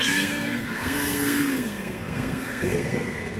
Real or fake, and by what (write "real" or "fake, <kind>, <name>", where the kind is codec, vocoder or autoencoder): fake, codec, SNAC